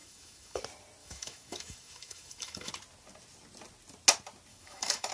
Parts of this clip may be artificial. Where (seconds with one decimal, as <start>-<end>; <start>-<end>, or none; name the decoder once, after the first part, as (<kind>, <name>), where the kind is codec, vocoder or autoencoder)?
0.0-0.6 (autoencoder, DAC-VAE); 1.0-2.7; 4.5-5.1